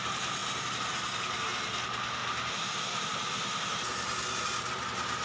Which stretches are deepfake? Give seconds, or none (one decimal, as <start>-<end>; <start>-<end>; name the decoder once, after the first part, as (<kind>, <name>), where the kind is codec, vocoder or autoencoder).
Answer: none